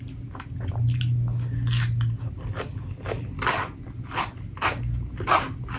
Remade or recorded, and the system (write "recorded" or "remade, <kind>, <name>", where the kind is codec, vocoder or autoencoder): recorded